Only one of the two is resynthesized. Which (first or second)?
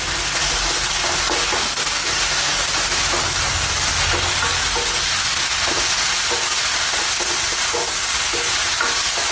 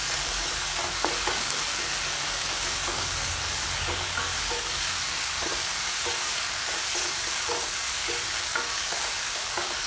second